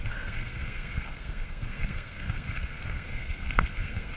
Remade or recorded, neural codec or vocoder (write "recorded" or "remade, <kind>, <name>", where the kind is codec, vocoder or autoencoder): remade, codec, SNAC